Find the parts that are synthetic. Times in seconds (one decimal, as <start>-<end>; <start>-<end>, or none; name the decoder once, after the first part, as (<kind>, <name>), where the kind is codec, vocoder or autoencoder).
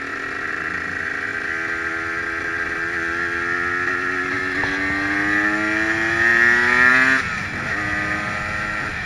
none